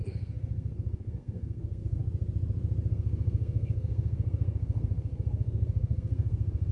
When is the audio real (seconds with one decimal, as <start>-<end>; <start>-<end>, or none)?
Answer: 2.0-2.9